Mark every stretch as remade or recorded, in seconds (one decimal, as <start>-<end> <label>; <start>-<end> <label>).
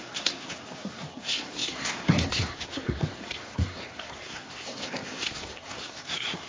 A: 0.0-6.5 remade